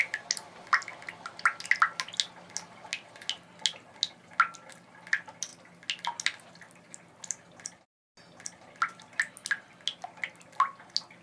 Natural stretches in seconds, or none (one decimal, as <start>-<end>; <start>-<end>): 0.0-11.2